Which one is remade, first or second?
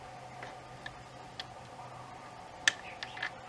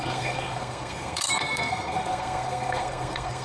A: second